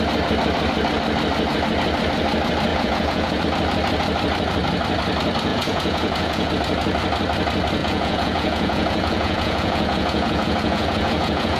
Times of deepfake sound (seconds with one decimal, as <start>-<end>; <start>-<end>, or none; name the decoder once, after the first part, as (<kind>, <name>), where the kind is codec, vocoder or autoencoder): 2.7-3.4 (vocoder, Vocos); 5.5-6.5; 7.8-11.6